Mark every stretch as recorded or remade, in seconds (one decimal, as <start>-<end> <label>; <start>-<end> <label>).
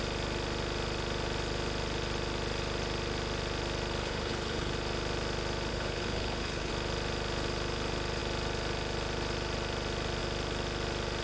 0.0-4.0 recorded; 4.0-4.7 remade; 4.7-5.7 recorded; 5.7-6.7 remade; 6.7-11.2 recorded